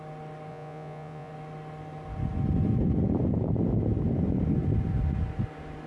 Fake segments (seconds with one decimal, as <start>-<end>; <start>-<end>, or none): 0.5-1.3